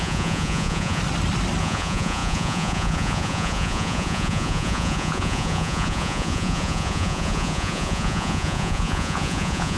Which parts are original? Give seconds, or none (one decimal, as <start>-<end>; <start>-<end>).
1.0-1.6